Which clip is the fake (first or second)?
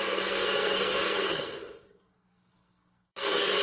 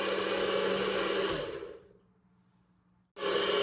first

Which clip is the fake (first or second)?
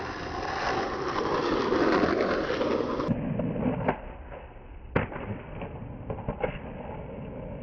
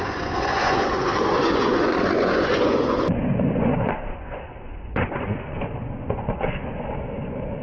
second